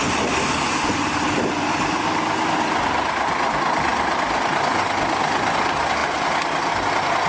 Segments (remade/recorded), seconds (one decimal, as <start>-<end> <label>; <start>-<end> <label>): 0.0-7.3 recorded